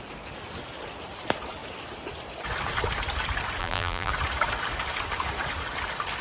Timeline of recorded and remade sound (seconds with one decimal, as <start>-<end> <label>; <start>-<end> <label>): 0.0-3.6 recorded; 3.6-4.1 remade; 4.1-6.2 recorded

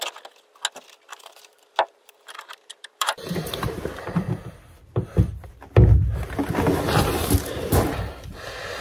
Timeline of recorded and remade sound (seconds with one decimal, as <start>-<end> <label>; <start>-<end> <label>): 0.0-1.1 recorded; 1.1-3.8 remade; 3.8-8.8 recorded